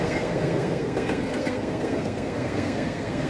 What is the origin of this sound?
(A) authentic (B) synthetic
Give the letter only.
B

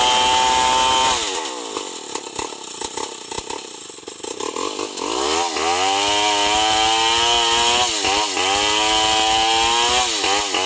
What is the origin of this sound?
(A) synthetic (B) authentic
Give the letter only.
B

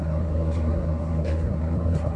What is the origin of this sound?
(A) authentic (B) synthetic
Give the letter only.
B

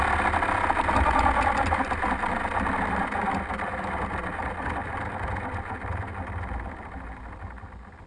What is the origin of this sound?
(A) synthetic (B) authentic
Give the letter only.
B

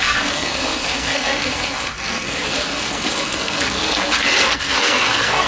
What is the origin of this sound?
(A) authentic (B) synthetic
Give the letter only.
B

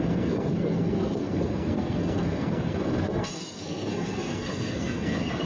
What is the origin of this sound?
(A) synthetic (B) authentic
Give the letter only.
A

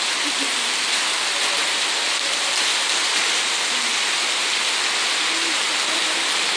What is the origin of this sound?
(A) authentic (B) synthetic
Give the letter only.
A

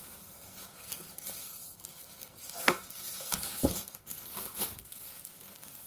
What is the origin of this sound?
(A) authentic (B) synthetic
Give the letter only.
B